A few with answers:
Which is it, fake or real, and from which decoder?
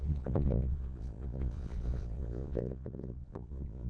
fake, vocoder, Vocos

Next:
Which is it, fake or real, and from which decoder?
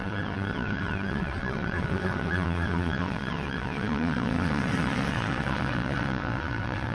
fake, vocoder, WaveNeXt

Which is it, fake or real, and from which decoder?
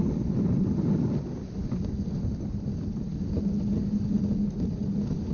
real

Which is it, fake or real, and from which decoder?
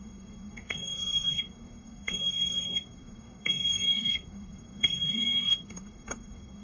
fake, codec, SNAC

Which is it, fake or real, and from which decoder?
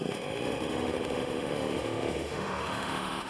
fake, autoencoder, DAC-VAE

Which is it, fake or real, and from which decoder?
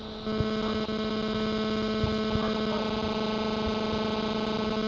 real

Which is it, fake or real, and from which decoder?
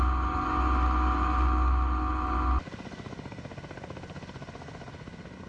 real